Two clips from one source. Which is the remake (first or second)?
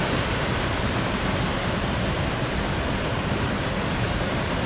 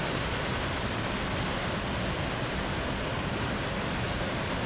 first